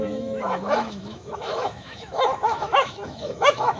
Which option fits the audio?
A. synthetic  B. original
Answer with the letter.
A